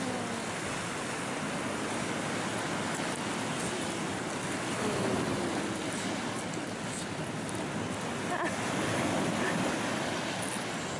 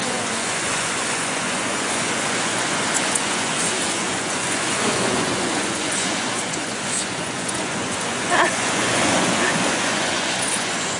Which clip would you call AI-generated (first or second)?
second